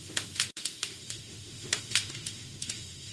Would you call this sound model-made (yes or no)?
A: yes